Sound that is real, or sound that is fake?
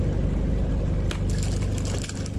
real